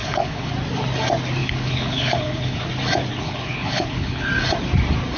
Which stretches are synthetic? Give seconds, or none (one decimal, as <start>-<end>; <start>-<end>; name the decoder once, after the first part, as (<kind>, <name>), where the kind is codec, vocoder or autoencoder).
0.0-0.5 (codec, HILCodec); 1.4-2.6; 3.1-4.3